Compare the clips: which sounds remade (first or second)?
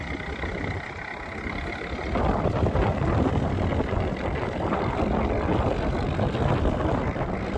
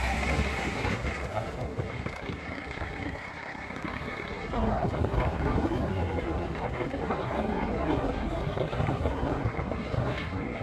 second